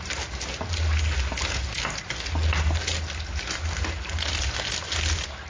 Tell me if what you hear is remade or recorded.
recorded